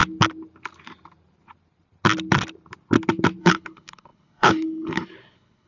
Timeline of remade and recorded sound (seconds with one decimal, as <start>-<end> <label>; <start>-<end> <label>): 0.0-3.4 recorded; 3.4-5.7 remade